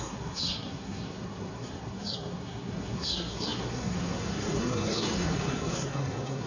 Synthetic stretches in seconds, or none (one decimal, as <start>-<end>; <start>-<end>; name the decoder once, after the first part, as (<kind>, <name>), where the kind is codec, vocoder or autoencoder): 0.0-6.5 (codec, SNAC)

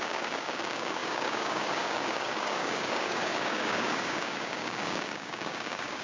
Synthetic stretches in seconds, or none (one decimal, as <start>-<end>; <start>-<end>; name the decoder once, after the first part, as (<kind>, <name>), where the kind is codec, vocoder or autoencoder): 0.0-6.0 (codec, DAC)

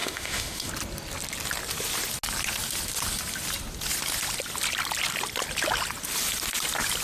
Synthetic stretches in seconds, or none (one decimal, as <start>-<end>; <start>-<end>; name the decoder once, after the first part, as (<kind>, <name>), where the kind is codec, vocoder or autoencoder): 0.0-0.7 (autoencoder, DAC-VAE)